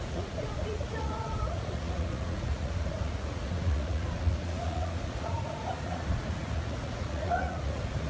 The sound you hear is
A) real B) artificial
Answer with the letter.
B